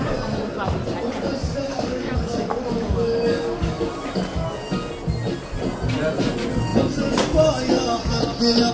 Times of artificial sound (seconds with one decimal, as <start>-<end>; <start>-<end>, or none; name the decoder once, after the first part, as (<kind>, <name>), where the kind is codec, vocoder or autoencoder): 1.7-3.9 (codec, DAC)